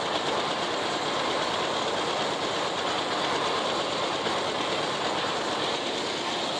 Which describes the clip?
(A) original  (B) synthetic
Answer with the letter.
A